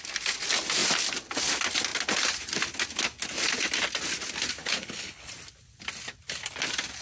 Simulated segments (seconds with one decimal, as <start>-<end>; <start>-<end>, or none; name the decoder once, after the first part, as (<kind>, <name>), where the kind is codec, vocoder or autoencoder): 4.6-5.3 (codec, HILCodec)